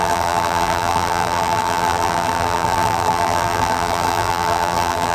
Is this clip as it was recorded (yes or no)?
no